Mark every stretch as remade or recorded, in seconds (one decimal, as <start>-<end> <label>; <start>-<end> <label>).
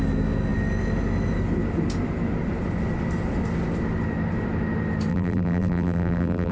0.0-5.1 recorded; 5.1-6.5 remade